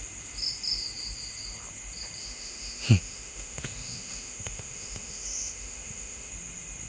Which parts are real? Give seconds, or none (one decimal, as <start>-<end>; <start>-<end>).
0.0-2.2; 6.3-6.9